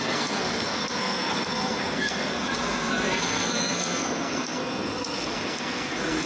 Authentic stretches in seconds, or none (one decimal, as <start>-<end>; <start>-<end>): none